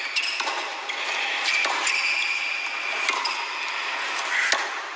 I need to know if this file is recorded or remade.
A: recorded